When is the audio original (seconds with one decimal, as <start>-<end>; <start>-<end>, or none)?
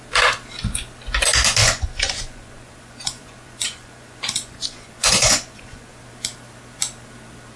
0.0-1.6; 6.0-7.6